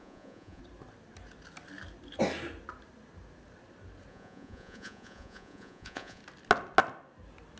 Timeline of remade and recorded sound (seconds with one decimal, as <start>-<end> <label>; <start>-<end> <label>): 0.0-0.6 remade; 0.6-4.1 recorded; 4.1-6.2 remade; 6.2-7.6 recorded